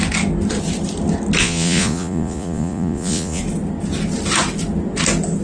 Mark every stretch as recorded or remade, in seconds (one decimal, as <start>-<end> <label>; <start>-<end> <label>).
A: 0.0-1.4 recorded; 1.4-3.4 remade; 3.4-5.4 recorded